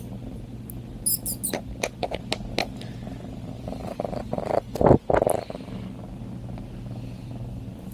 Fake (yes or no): no